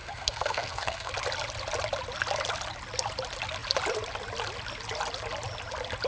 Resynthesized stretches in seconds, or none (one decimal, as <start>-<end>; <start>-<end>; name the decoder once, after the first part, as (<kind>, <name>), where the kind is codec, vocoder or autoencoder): 0.0-1.1 (codec, SNAC)